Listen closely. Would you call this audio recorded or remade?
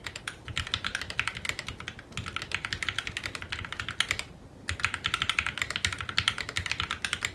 recorded